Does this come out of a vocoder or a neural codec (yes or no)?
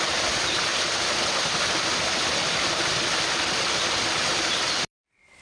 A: no